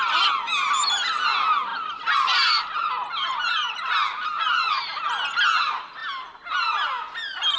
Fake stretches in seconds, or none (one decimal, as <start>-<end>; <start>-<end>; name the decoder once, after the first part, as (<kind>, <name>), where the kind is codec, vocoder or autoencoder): none